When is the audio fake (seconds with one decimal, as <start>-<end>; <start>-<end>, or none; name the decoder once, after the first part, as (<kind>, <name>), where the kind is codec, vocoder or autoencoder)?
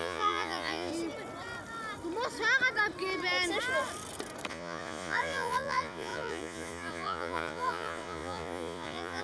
0.0-0.9 (vocoder, Vocos); 4.5-9.2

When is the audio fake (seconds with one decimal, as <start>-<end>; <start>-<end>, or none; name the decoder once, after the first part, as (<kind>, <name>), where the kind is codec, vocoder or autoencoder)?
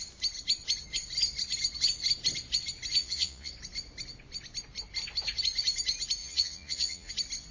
3.0-3.5 (vocoder, Vocos); 6.2-7.1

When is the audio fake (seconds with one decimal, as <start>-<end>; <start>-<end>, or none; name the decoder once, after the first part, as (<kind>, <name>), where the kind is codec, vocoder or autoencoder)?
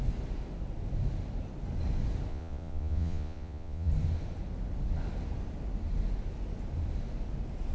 2.3-3.9 (vocoder, Vocos)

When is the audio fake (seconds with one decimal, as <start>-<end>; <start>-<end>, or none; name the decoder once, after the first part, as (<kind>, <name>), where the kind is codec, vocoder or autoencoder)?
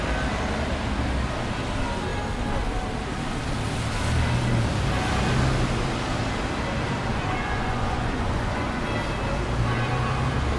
7.1-8.8 (vocoder, Vocos)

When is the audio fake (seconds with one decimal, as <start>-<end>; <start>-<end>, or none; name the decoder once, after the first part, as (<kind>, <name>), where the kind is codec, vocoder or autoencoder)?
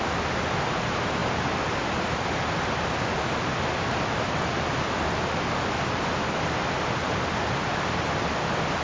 none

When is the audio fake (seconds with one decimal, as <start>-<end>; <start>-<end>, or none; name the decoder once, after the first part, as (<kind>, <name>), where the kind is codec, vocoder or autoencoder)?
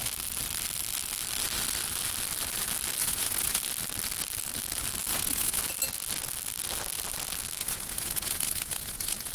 3.0-3.6 (vocoder, Vocos); 5.1-5.6; 7.6-9.3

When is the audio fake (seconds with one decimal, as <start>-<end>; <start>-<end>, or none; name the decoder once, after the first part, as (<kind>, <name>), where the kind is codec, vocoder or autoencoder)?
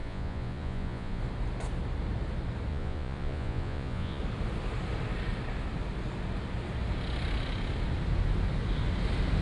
0.0-1.2 (vocoder, Vocos); 2.7-4.2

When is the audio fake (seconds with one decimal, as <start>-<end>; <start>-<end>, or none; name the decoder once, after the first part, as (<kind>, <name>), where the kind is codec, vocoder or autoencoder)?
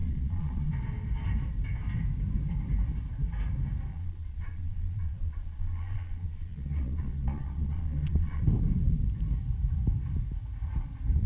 0.0-0.7 (vocoder, Vocos); 3.9-8.4